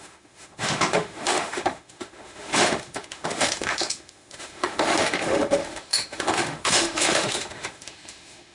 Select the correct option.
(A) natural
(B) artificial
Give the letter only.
B